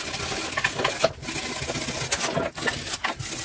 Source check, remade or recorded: recorded